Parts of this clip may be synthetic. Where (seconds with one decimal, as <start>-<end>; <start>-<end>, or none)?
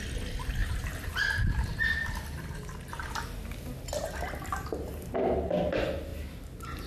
0.6-1.2